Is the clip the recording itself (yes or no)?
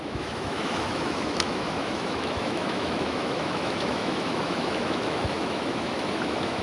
no